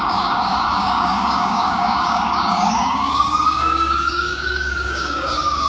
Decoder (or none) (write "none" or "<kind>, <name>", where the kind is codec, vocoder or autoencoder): codec, DAC